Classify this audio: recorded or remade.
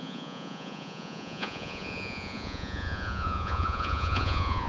remade